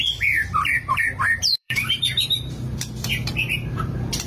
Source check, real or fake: fake